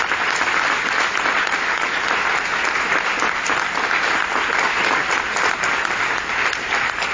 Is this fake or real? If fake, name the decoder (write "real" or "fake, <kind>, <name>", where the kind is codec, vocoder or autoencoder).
real